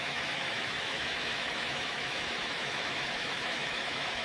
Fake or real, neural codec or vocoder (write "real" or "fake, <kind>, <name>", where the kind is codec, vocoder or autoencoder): fake, autoencoder, DAC-VAE